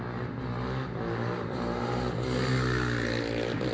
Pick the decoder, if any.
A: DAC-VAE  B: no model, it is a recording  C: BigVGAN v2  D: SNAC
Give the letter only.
B